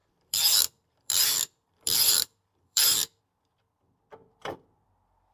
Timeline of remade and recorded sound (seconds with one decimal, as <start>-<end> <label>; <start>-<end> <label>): 0.0-3.2 remade; 3.2-5.3 recorded